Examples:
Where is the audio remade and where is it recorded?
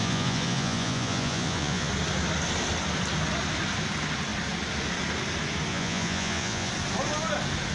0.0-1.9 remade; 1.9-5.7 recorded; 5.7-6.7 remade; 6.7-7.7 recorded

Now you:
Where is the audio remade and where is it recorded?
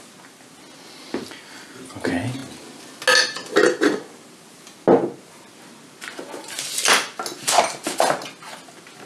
0.0-9.0 recorded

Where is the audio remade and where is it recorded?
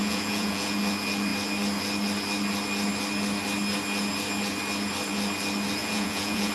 0.0-0.8 remade; 0.8-5.8 recorded; 5.8-6.5 remade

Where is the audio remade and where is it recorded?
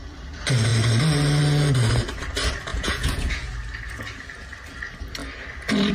0.0-2.7 recorded; 2.7-3.5 remade; 3.5-5.9 recorded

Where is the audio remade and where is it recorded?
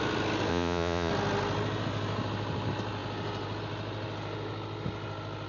0.0-0.5 recorded; 0.5-1.1 remade; 1.1-5.5 recorded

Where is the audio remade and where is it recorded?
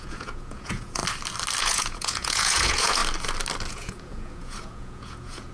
0.0-1.0 remade; 1.0-1.6 recorded; 1.6-3.0 remade; 3.0-3.7 recorded; 3.7-5.5 remade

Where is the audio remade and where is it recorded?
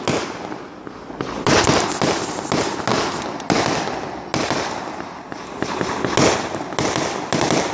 0.0-7.7 recorded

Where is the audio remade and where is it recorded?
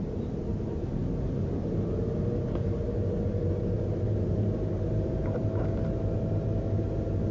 0.0-7.3 recorded